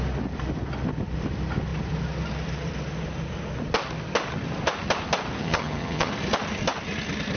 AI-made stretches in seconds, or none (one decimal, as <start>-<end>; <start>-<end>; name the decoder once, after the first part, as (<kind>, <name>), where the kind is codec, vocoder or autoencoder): 5.4-6.1 (vocoder, HiFi-GAN)